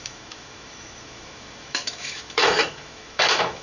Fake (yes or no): yes